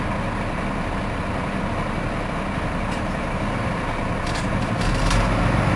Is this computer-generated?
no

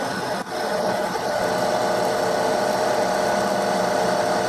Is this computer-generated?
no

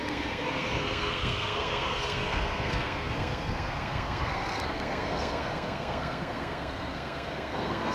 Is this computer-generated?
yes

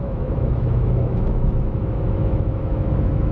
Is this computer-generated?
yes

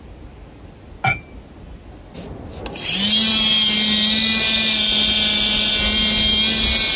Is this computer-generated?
no